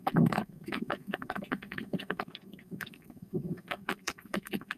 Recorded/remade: remade